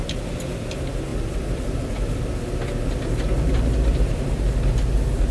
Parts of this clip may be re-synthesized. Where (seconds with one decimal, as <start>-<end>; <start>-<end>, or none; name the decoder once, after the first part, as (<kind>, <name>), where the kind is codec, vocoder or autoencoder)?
3.9-4.7 (vocoder, BigVGAN v2)